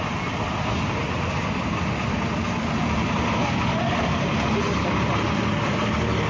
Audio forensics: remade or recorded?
recorded